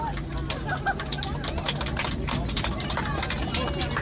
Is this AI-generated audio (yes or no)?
no